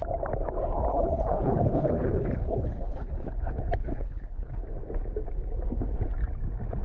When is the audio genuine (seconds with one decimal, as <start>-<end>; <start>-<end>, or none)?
0.0-0.9; 3.3-3.8; 4.6-6.8